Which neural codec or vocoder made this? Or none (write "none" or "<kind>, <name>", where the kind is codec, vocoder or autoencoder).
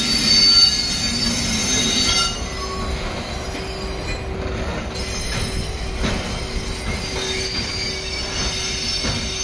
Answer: none